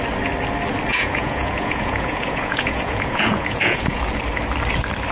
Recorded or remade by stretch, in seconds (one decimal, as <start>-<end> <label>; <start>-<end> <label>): 0.0-0.9 recorded; 0.9-4.0 remade; 4.0-5.1 recorded